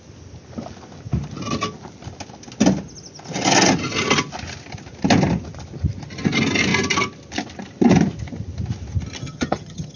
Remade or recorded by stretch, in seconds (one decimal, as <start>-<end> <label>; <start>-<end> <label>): 0.0-9.2 recorded; 9.2-10.0 remade